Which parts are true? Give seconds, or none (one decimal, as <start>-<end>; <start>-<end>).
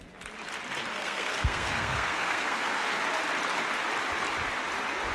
0.0-0.9; 2.9-5.1